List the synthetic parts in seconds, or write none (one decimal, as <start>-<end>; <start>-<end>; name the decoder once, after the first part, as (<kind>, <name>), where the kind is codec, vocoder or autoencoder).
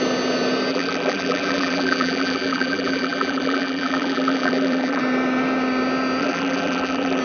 0.7-5.0 (vocoder, BigVGAN v2); 6.2-7.2